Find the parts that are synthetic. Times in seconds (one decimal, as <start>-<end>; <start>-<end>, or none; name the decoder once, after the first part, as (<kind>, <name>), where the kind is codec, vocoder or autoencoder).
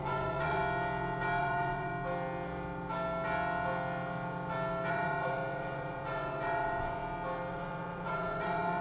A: 0.0-0.6 (vocoder, Vocos); 1.4-1.9; 4.9-7.0; 7.5-8.8